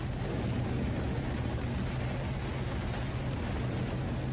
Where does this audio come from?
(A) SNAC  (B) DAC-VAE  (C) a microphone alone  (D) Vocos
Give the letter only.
C